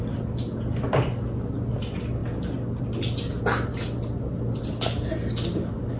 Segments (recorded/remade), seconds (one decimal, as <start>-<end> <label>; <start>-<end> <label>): 0.0-6.0 recorded